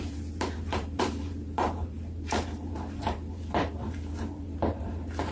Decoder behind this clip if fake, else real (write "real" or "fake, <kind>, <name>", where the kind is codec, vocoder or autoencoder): fake, vocoder, BigVGAN v2